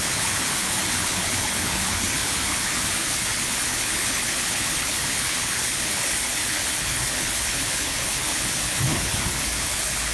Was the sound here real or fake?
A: fake